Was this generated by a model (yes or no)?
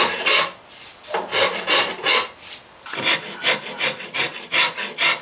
no